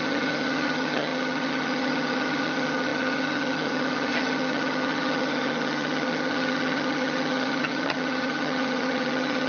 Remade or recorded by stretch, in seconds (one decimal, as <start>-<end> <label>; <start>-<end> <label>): 0.0-9.5 remade